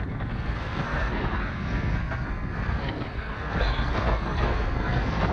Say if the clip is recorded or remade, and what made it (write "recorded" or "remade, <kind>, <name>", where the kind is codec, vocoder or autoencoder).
remade, codec, SNAC